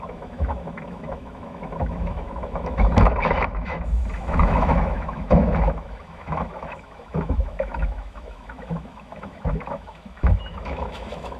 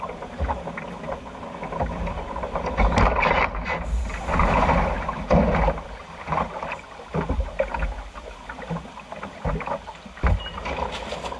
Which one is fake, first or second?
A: first